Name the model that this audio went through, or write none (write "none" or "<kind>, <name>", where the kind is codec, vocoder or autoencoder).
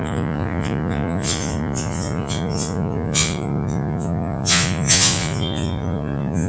vocoder, Vocos